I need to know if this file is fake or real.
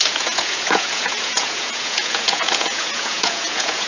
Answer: fake